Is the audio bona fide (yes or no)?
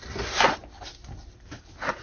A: yes